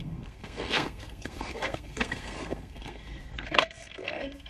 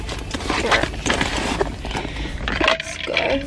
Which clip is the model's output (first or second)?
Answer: first